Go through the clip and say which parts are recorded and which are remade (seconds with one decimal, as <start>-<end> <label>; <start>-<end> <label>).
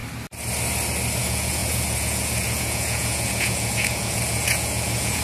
0.0-1.2 recorded; 1.2-5.2 remade